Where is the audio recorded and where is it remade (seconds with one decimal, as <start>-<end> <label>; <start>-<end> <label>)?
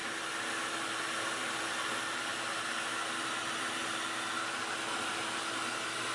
0.0-6.1 recorded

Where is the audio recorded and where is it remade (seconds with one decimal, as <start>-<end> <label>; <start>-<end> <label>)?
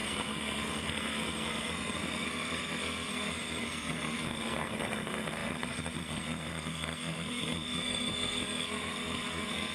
0.0-9.7 remade